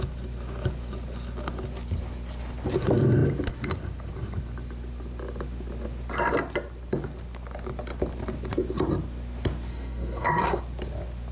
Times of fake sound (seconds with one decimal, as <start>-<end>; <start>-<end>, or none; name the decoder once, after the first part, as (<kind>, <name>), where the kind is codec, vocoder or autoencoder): 9.7-10.6 (codec, SNAC)